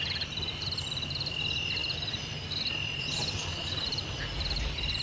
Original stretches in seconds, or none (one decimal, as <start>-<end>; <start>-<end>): 0.0-5.0